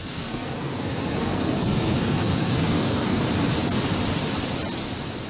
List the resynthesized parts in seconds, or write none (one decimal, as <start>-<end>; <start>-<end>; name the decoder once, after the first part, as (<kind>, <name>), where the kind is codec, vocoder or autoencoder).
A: 0.0-3.2 (codec, SNAC)